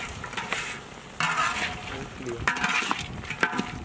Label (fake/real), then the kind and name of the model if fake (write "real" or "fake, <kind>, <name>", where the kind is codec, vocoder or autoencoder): real